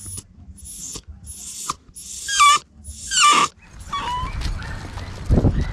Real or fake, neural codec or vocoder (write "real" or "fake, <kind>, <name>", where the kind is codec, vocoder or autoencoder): real